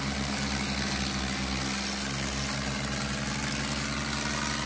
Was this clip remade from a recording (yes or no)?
no